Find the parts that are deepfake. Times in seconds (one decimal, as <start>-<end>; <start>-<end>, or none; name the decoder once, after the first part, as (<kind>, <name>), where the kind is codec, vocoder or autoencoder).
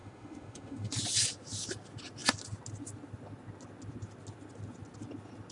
0.0-0.9 (autoencoder, DAC-VAE)